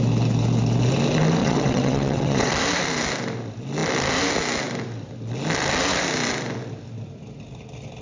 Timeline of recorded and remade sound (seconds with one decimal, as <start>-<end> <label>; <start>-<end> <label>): 0.0-1.4 recorded; 1.4-2.5 remade; 2.5-8.0 recorded